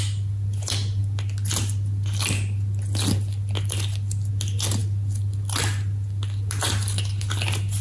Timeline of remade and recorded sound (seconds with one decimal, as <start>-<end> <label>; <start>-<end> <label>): 0.0-7.8 recorded